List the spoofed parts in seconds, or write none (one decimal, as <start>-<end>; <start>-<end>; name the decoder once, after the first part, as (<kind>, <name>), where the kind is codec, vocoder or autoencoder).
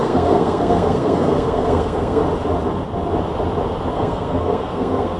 0.0-2.2 (codec, SNAC); 3.9-5.2